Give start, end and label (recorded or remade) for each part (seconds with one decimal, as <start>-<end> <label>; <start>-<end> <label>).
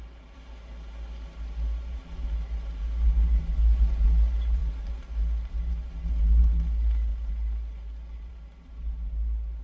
0.0-9.6 recorded